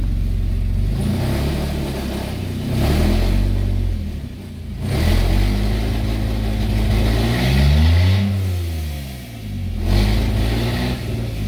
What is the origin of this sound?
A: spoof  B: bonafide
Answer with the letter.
B